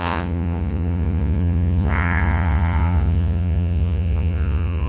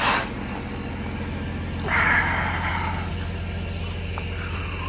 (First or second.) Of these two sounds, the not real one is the first